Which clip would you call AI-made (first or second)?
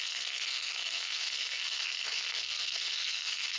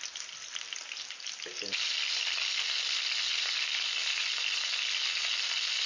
first